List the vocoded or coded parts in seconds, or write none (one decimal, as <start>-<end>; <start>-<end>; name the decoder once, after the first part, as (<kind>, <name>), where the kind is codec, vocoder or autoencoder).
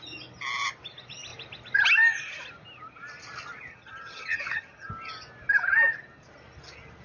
3.7-4.9 (vocoder, HiFi-GAN)